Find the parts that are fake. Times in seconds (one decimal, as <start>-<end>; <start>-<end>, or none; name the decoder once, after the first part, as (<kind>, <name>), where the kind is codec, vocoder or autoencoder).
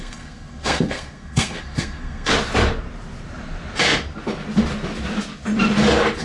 0.0-2.3 (codec, SNAC)